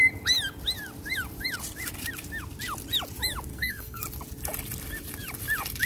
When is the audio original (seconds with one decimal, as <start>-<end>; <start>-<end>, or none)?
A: 0.0-3.5; 4.0-5.9